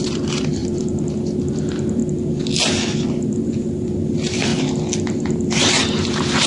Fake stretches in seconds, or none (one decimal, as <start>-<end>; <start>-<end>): 0.0-2.0; 3.1-4.5; 5.6-6.5